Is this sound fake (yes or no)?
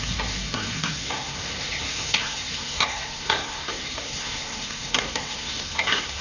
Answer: yes